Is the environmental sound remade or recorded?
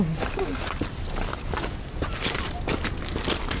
recorded